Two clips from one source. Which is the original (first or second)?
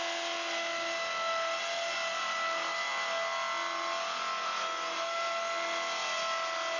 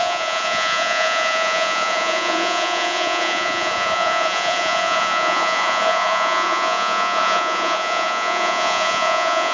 first